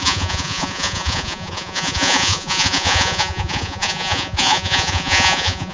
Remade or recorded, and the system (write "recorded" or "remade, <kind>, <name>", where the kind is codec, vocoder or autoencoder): remade, vocoder, Vocos